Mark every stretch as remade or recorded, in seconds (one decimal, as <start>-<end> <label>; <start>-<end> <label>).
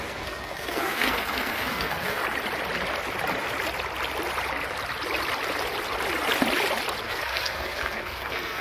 0.0-2.2 remade; 2.2-7.0 recorded; 7.0-8.6 remade